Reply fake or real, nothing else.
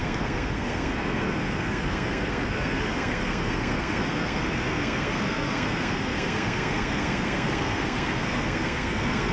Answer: fake